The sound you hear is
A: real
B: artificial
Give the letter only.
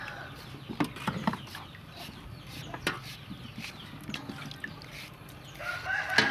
A